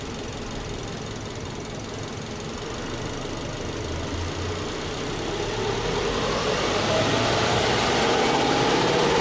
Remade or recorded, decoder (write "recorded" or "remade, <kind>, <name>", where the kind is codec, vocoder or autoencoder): recorded